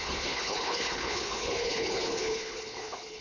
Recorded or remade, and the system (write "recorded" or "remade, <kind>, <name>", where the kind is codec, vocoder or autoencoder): remade, codec, HILCodec